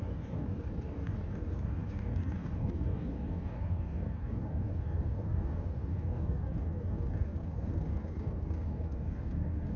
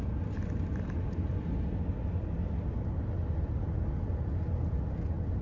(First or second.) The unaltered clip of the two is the second